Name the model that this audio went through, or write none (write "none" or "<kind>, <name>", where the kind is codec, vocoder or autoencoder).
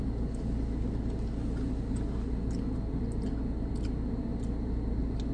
none